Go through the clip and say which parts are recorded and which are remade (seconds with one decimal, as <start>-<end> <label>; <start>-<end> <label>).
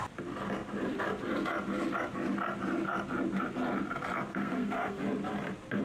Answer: 0.0-4.3 recorded; 4.3-5.0 remade; 5.0-5.8 recorded